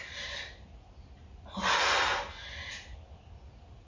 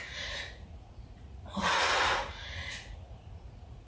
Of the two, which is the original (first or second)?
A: first